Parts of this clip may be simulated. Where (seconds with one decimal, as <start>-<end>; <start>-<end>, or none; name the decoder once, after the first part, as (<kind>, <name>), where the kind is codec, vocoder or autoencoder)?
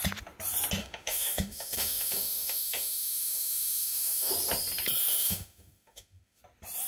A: 0.8-4.3 (autoencoder, DAC-VAE); 5.0-6.4